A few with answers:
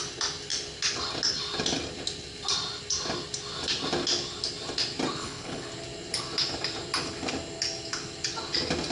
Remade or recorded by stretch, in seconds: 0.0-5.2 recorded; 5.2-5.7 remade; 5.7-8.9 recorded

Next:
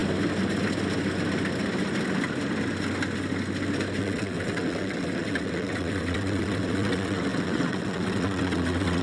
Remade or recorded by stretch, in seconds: 0.0-4.0 recorded; 4.0-9.0 remade

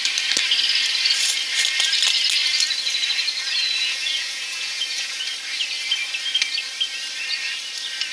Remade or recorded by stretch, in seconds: 0.0-3.8 recorded; 3.8-5.2 remade; 5.2-8.1 recorded

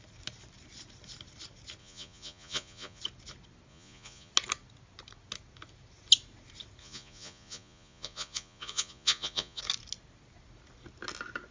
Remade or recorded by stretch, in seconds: 0.0-1.8 recorded; 1.8-3.0 remade; 3.0-3.7 recorded; 3.7-4.3 remade; 4.3-6.8 recorded; 6.8-9.6 remade; 9.6-11.5 recorded

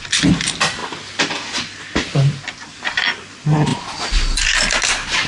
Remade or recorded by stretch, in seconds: 0.0-5.3 recorded

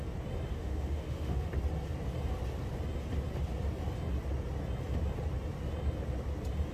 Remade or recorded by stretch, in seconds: 0.0-0.5 recorded; 0.5-1.5 remade; 1.5-6.7 recorded